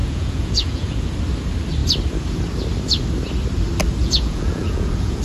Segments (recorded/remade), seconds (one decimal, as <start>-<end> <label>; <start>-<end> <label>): 0.0-1.1 remade; 1.1-4.0 recorded; 4.0-5.2 remade